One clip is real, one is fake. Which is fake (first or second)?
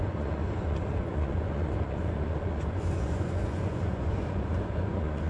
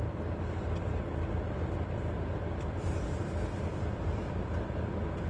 first